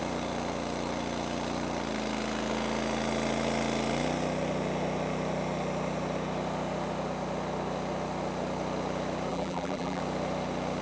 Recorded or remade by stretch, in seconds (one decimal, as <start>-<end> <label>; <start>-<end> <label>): 0.0-9.3 recorded; 9.3-10.0 remade; 10.0-10.8 recorded